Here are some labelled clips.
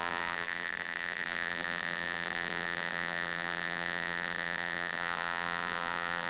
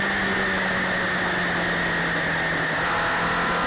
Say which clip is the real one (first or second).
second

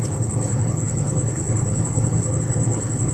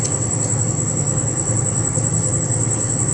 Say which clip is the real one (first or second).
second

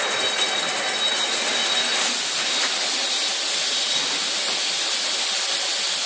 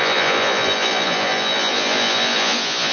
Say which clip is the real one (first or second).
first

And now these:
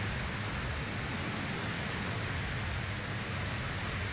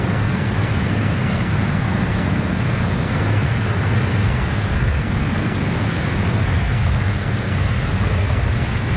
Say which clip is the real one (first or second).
first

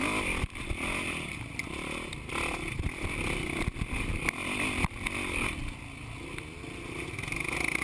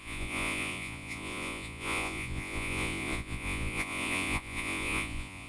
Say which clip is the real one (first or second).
first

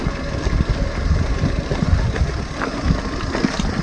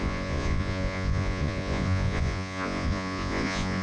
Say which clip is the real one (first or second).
first